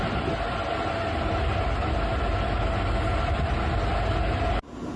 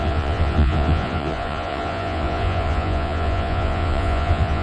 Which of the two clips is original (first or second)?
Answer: first